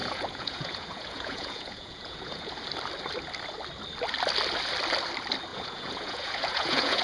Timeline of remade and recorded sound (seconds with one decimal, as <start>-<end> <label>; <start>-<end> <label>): 0.0-2.5 remade; 2.5-5.5 recorded; 5.5-7.0 remade